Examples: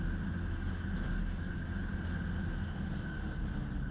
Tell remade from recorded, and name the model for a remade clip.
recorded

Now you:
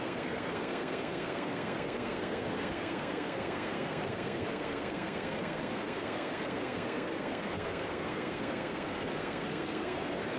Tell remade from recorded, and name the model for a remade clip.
remade, codec, SNAC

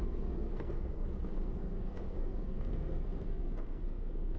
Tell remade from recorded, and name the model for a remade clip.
remade, codec, SNAC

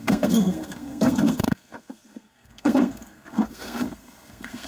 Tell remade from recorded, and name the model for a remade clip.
remade, codec, SNAC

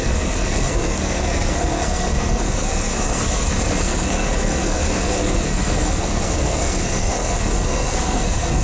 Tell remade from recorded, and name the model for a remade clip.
remade, codec, SNAC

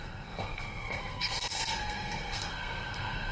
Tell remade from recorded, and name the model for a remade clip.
remade, codec, SNAC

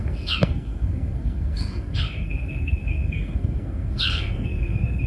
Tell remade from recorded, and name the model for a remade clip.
remade, codec, SNAC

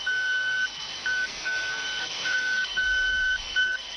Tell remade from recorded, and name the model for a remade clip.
remade, codec, SNAC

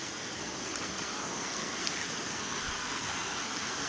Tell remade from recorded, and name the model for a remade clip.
remade, codec, SNAC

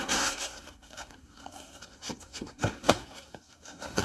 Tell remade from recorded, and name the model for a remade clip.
remade, codec, SNAC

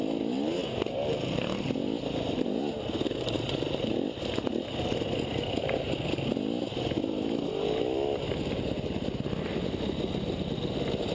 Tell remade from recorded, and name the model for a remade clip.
recorded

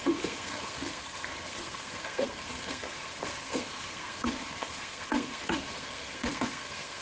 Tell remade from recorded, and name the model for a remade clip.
remade, codec, SNAC